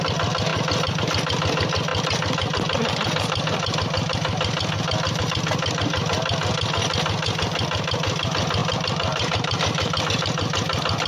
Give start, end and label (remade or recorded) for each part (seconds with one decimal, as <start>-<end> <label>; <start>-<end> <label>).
0.0-8.6 recorded; 8.6-10.0 remade; 10.0-11.1 recorded